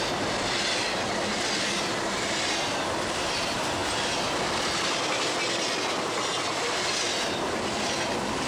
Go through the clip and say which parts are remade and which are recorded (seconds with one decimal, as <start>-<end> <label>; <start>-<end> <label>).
0.0-8.5 recorded